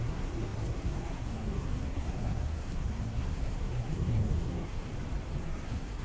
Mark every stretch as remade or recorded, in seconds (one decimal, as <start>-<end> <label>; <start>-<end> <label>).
0.0-4.9 remade; 4.9-5.4 recorded; 5.4-6.0 remade